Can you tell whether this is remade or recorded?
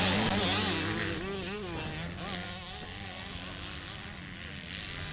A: recorded